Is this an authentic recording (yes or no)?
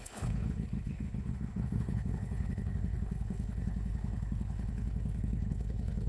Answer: no